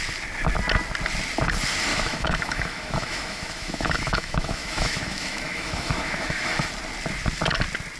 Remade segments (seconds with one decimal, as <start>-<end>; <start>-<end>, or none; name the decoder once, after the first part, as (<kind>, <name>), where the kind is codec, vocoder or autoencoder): 1.9-6.7 (autoencoder, DAC-VAE)